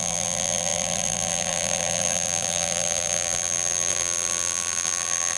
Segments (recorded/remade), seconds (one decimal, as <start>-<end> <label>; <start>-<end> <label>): 0.0-5.4 remade